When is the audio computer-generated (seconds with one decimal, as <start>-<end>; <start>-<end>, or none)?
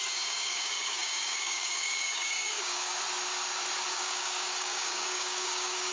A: 0.0-2.9; 3.9-5.9